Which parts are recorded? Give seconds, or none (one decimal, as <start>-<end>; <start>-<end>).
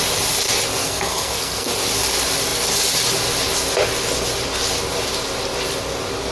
0.0-0.8; 1.7-6.3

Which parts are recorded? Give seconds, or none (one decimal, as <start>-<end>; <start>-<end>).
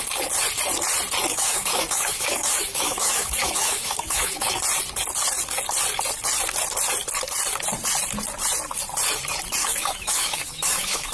0.0-1.3; 4.6-9.6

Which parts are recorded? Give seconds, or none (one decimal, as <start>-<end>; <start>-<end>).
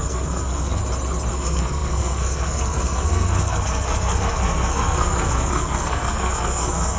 0.8-1.3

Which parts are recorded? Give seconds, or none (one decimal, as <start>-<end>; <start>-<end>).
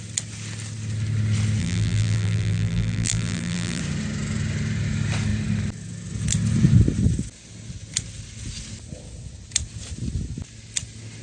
0.0-1.6; 3.8-11.2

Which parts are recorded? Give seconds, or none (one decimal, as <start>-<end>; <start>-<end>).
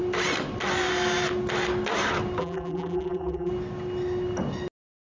0.0-2.4; 3.5-5.0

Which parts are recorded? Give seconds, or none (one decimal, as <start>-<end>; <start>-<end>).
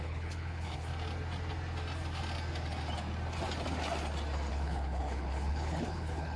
0.9-4.5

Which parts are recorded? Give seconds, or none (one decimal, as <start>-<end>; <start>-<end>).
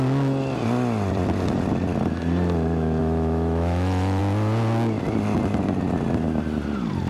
0.0-3.0; 4.2-7.1